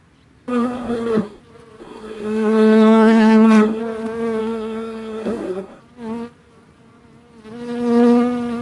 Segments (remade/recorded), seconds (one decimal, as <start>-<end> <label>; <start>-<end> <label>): 0.0-0.5 recorded; 0.5-1.4 remade; 1.4-1.8 recorded; 1.8-3.8 remade; 3.8-4.4 recorded; 4.4-5.8 remade; 5.8-8.6 recorded

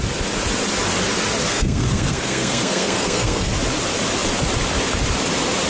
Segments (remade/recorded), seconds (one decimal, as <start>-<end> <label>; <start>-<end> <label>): 0.0-1.5 recorded; 1.5-3.5 remade; 3.5-5.7 recorded

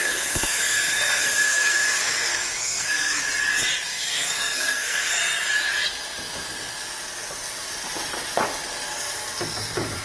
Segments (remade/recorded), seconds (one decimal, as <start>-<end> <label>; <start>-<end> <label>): 0.0-3.2 remade; 3.2-3.9 recorded; 3.9-5.2 remade; 5.2-10.0 recorded

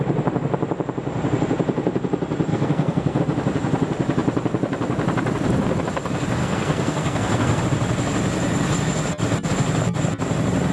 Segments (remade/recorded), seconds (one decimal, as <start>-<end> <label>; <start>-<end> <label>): 0.0-2.5 recorded; 2.5-3.2 remade; 3.2-6.4 recorded; 6.4-7.6 remade; 7.6-10.7 recorded